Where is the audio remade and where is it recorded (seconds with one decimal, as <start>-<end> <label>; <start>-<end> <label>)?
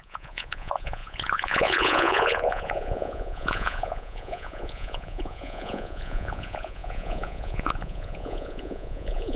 0.0-9.4 remade